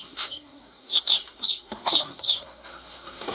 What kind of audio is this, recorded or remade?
remade